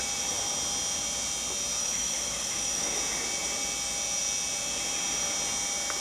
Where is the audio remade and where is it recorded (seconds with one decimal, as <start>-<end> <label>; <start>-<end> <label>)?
0.0-1.8 recorded; 1.8-3.0 remade; 3.0-6.0 recorded